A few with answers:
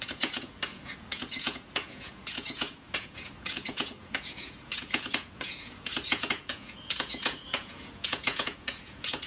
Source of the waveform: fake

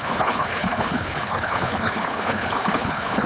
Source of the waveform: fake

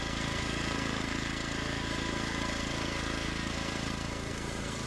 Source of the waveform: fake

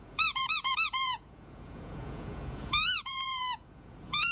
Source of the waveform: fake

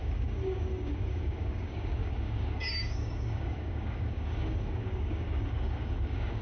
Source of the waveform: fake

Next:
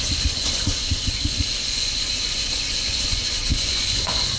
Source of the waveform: fake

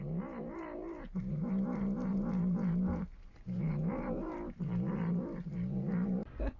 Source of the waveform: real